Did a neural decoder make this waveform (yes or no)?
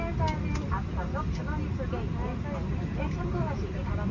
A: no